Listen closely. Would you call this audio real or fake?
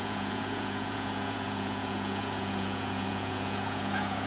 fake